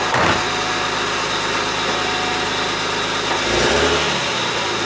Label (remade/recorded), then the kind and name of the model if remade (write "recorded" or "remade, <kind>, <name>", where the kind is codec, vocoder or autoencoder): recorded